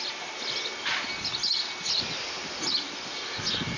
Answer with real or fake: real